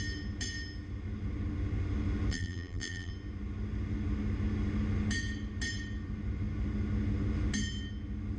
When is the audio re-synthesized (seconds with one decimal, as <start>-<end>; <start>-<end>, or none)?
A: 2.3-3.1